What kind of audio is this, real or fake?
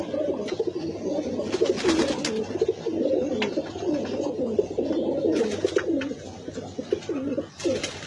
real